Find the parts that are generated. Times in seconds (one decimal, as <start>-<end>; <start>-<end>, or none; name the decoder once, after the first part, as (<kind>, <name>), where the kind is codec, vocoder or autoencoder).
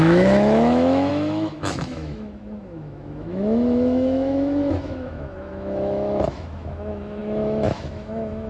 0.0-8.5 (autoencoder, DAC-VAE)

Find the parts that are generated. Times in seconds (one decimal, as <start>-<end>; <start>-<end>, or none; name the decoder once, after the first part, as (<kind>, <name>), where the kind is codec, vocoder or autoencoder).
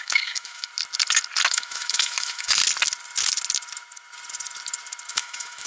0.0-0.7 (autoencoder, DAC-VAE); 1.5-2.6; 5.1-5.7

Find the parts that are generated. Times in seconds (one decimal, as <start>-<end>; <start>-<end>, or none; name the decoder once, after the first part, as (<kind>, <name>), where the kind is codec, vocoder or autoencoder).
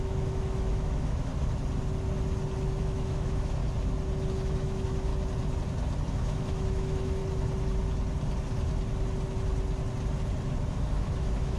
0.0-1.3 (autoencoder, DAC-VAE); 2.8-3.6; 4.3-5.1; 6.1-7.2; 10.7-11.6